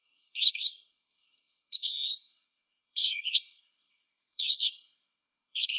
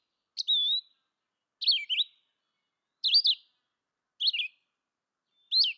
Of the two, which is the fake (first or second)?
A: first